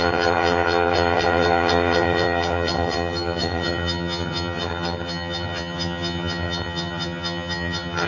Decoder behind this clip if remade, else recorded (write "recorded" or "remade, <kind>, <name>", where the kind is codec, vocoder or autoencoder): remade, vocoder, HiFi-GAN